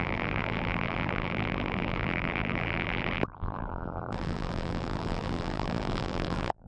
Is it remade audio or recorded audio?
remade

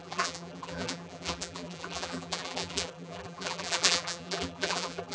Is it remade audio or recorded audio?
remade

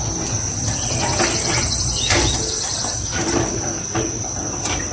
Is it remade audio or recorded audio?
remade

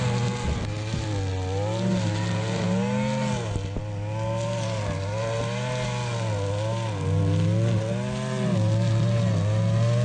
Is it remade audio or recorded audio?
recorded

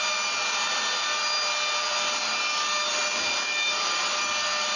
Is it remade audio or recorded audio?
recorded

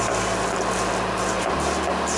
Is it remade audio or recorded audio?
recorded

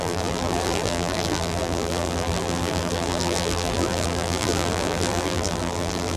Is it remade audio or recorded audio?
remade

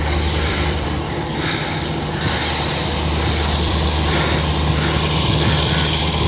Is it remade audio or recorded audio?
remade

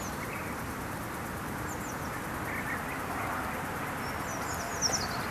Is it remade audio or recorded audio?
recorded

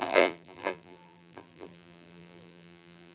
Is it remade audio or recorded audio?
remade